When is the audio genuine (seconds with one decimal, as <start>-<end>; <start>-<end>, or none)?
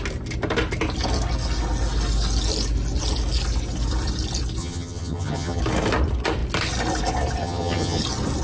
0.0-4.6; 5.6-7.4; 8.0-8.4